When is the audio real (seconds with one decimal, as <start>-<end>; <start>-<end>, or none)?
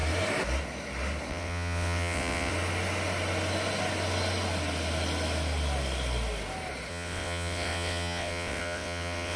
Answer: 0.0-1.3; 2.5-6.9